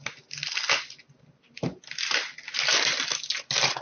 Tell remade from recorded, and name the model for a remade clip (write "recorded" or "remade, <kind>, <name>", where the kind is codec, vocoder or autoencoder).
recorded